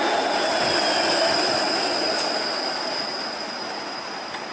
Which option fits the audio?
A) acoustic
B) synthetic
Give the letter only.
A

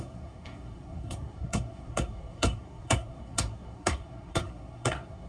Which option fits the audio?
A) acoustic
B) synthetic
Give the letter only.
B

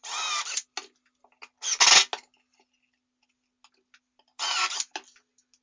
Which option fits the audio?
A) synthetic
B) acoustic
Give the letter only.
B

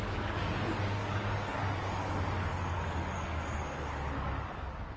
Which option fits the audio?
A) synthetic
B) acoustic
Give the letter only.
A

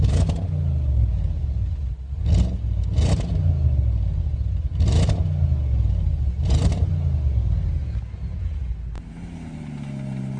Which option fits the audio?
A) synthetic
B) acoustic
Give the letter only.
B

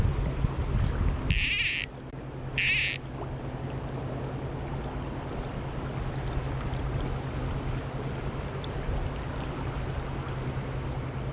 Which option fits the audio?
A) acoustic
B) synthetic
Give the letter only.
A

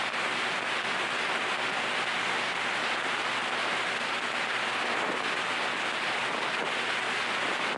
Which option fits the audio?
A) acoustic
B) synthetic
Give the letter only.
A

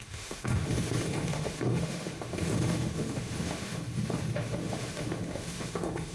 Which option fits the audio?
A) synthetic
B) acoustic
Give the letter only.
A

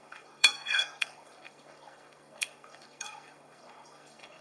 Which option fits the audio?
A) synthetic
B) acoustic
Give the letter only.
A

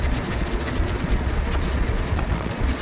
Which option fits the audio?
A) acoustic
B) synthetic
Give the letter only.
B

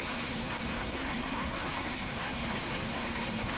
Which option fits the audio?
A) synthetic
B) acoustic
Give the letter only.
A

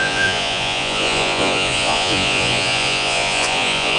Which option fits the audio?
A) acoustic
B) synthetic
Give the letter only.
B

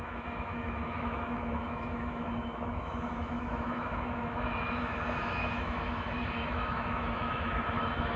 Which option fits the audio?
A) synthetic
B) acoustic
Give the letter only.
A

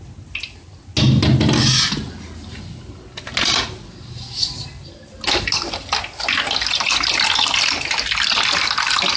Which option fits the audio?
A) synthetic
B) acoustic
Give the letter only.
B